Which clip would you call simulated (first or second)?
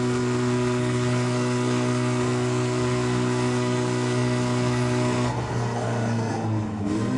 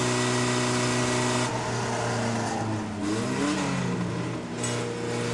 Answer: first